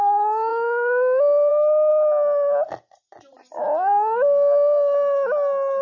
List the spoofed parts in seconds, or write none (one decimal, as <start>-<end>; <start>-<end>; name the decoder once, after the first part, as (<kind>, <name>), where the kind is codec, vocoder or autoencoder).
none